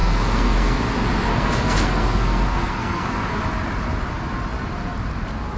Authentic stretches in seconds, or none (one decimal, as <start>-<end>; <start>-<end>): 0.8-1.3; 3.4-5.6